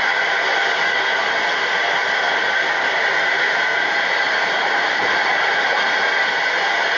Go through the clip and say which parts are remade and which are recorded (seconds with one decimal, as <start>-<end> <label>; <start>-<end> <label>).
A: 0.0-3.7 recorded; 3.7-5.0 remade; 5.0-7.0 recorded

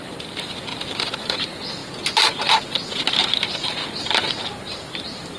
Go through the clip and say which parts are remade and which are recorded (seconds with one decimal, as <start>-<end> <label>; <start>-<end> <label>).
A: 0.0-1.8 remade; 1.8-3.1 recorded; 3.1-3.8 remade; 3.8-4.4 recorded; 4.4-5.4 remade

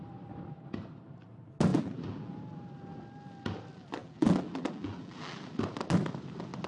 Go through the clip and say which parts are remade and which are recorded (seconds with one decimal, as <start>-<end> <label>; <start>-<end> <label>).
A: 0.0-1.7 recorded; 1.7-2.3 remade; 2.3-4.0 recorded; 4.0-5.5 remade; 5.5-6.7 recorded

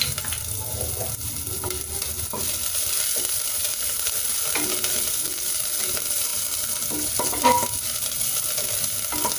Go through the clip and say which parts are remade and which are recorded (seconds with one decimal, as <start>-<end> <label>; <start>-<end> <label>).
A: 0.0-3.6 recorded; 3.6-4.1 remade; 4.1-9.4 recorded